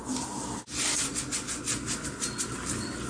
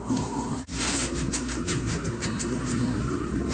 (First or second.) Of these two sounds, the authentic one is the first